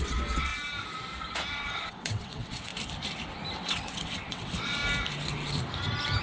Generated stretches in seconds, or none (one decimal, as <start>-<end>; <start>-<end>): 0.0-0.5; 1.5-2.7; 3.6-4.8